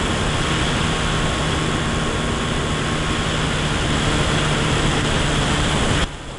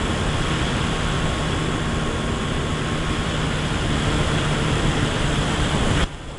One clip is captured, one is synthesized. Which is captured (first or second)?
first